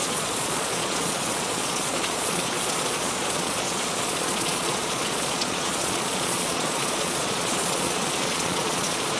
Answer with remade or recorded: remade